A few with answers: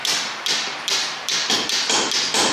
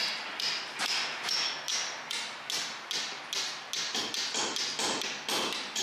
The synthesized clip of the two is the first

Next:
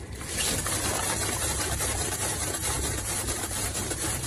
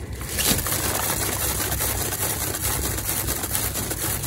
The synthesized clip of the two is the first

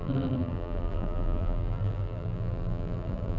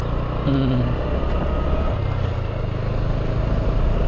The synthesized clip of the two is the first